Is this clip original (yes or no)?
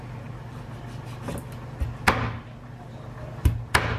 yes